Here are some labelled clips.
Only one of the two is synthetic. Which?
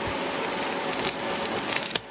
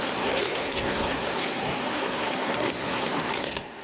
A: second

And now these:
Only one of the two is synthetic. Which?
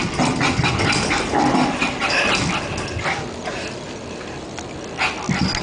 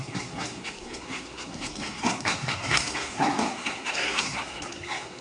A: second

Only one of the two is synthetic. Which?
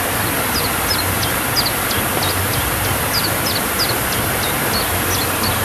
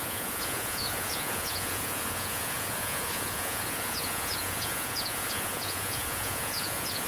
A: second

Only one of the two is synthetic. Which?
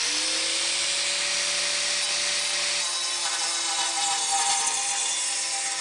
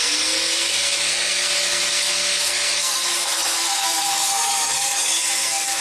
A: second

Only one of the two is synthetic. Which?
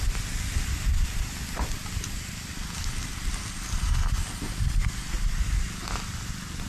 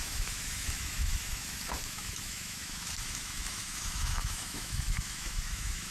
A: second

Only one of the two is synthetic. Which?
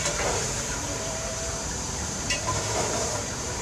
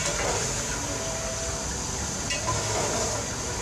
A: first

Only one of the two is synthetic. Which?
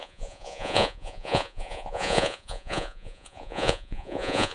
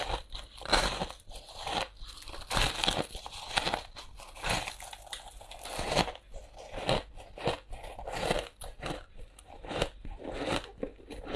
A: first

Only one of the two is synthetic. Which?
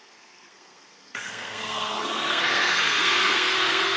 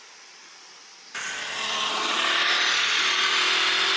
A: first